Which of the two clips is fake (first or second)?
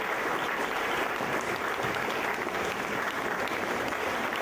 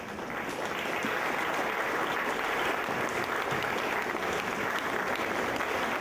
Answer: first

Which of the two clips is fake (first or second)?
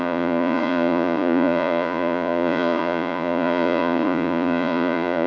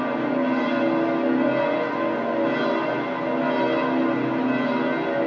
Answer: first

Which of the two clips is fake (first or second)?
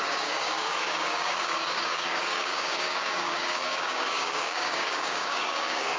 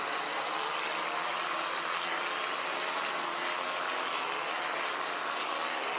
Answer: first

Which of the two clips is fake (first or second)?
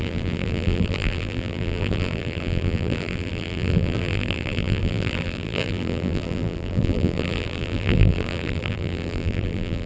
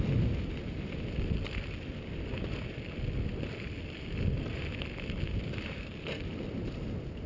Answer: first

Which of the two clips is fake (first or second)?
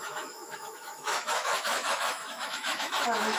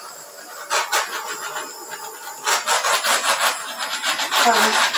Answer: first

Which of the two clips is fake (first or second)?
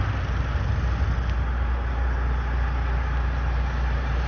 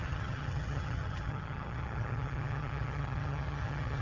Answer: second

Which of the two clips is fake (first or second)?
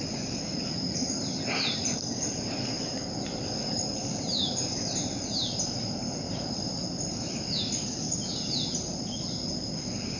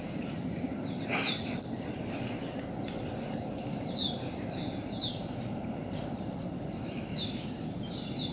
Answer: second